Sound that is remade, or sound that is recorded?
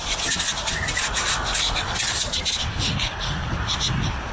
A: recorded